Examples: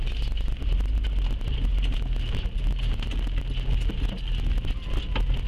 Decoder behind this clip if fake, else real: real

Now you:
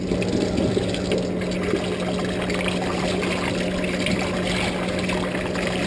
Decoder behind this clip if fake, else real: real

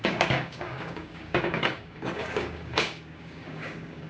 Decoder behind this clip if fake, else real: fake, codec, DAC